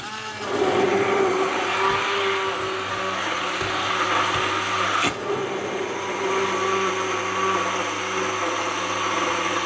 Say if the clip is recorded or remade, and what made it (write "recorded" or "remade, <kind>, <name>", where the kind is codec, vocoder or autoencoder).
recorded